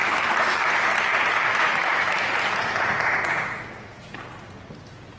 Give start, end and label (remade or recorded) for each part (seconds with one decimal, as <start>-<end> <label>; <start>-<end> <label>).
0.0-0.7 remade; 0.7-1.5 recorded; 1.5-2.3 remade; 2.3-5.2 recorded

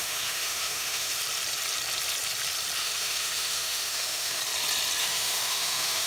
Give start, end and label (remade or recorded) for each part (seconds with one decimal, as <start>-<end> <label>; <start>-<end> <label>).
0.0-1.2 remade; 1.2-2.8 recorded; 2.8-4.4 remade; 4.4-5.0 recorded; 5.0-6.1 remade

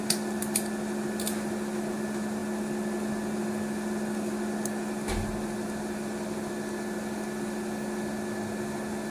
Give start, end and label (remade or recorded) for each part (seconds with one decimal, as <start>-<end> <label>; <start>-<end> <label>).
0.0-9.1 recorded

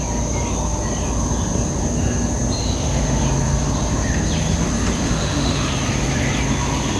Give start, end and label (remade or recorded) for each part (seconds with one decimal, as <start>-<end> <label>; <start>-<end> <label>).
0.0-2.6 recorded; 2.6-3.2 remade; 3.2-5.0 recorded; 5.0-5.7 remade; 5.7-7.0 recorded

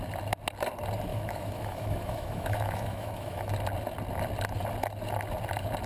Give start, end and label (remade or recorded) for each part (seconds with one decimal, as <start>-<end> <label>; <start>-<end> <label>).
0.0-1.1 recorded; 1.1-3.5 remade; 3.5-5.9 recorded

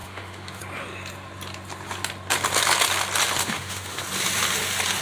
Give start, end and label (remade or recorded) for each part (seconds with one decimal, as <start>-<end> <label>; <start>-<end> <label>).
0.0-0.6 remade; 0.6-3.4 recorded; 3.4-4.0 remade; 4.0-5.0 recorded

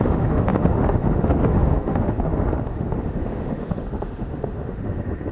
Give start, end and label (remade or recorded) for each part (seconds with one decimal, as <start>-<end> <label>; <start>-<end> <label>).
0.0-5.3 remade

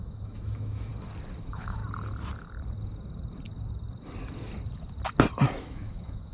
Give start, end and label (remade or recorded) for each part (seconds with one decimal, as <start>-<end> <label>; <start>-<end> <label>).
0.0-0.9 remade; 0.9-1.4 recorded; 1.4-1.8 remade; 1.8-5.6 recorded; 5.6-6.3 remade